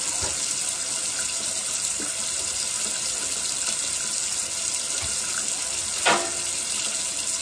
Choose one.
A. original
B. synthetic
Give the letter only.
A